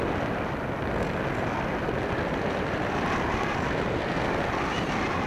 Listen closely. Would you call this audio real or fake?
real